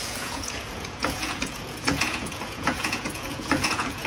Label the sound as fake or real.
fake